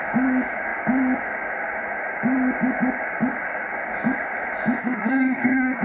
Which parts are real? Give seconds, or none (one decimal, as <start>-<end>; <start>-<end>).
0.0-4.8